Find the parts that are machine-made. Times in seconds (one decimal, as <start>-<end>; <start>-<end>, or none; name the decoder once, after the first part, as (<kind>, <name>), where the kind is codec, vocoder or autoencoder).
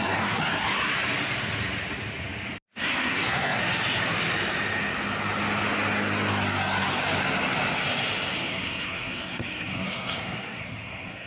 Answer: 0.0-0.4 (codec, SNAC); 2.8-3.6; 8.5-11.3